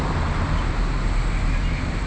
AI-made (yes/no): no